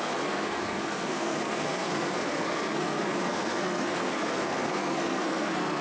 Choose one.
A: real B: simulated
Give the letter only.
B